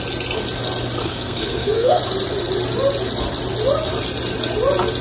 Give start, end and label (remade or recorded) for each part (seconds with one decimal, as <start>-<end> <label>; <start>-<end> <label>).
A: 0.0-1.0 recorded; 1.0-2.0 remade; 2.0-5.0 recorded